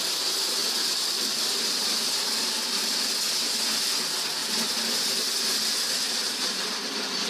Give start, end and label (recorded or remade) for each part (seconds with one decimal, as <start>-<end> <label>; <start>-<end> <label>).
0.0-7.3 recorded